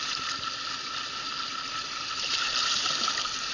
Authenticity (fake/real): real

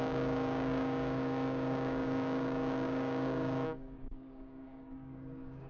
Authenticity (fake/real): fake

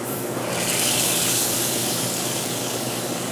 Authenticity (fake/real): fake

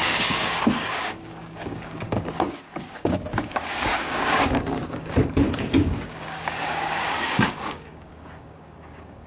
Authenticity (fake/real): fake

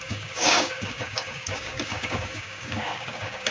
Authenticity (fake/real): fake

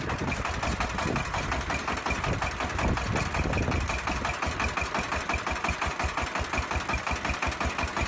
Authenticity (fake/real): real